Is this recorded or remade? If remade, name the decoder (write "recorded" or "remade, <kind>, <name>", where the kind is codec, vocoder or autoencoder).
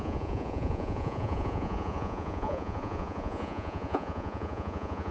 remade, vocoder, Vocos